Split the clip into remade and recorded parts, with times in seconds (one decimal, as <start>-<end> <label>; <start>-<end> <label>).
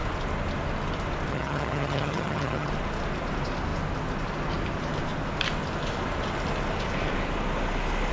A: 0.0-1.3 recorded; 1.3-2.7 remade; 2.7-8.1 recorded